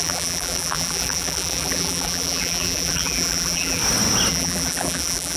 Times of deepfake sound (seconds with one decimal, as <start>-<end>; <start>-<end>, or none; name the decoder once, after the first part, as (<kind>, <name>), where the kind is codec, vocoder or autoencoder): 0.0-3.8 (vocoder, BigVGAN v2); 4.3-5.4